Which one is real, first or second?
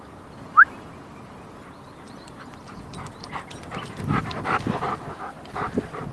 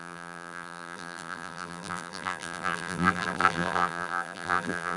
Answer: first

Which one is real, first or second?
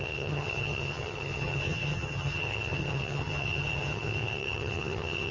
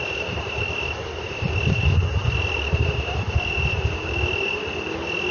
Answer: second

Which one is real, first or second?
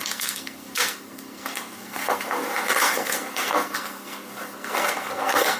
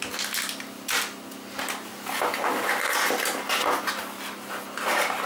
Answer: second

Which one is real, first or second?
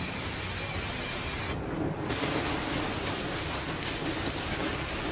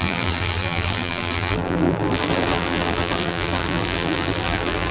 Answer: first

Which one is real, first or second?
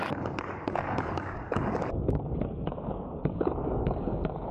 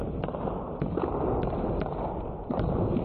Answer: second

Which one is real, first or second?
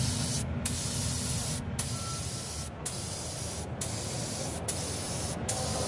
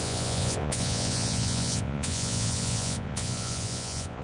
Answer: first